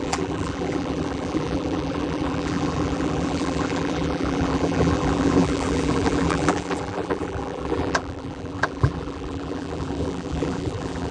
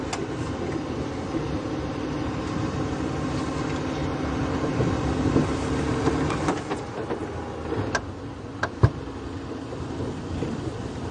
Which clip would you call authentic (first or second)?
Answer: second